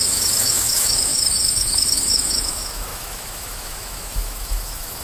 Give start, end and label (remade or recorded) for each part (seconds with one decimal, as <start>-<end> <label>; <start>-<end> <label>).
0.0-5.0 remade